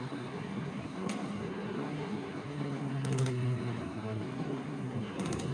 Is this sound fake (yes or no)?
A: yes